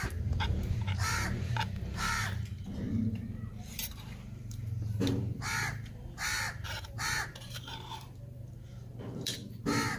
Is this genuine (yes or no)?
no